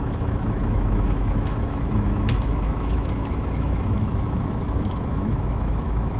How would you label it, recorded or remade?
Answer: remade